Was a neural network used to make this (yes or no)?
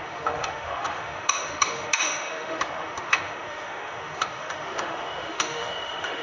yes